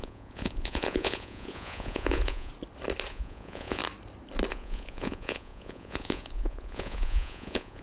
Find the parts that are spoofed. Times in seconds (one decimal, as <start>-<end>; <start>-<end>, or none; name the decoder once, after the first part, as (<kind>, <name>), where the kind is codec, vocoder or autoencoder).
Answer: 0.0-2.5 (vocoder, Vocos); 3.1-3.8; 4.5-7.8